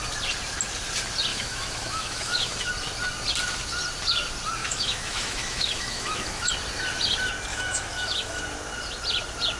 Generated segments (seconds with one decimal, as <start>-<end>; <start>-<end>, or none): 1.3-2.7; 4.6-6.5; 7.5-8.4